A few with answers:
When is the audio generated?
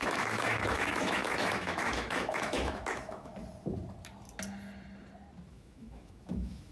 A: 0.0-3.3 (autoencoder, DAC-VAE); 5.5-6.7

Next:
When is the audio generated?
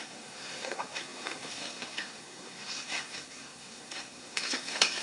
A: 0.0-5.0 (codec, SNAC)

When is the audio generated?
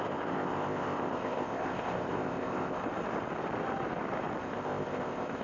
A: 0.0-2.8 (codec, ZipCodec); 4.4-5.4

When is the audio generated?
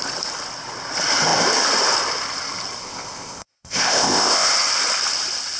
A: 2.8-4.5 (codec, ZipCodec)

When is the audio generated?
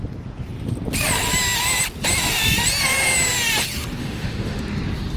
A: 4.0-4.6 (autoencoder, DAC-VAE)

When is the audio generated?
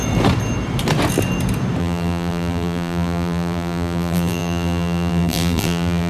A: 1.8-6.1 (vocoder, BigVGAN v2)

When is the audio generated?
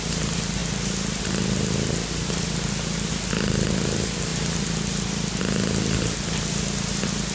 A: none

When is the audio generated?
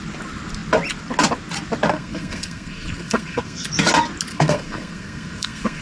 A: 1.9-3.7 (codec, SNAC); 4.3-5.8